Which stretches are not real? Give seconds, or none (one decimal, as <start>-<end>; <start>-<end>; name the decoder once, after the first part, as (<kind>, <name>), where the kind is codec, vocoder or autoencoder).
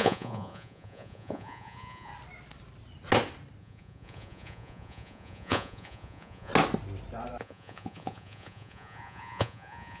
0.0-2.1 (vocoder, Vocos); 3.6-6.5; 7.4-10.0